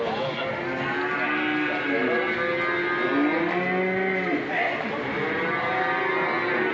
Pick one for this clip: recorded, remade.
recorded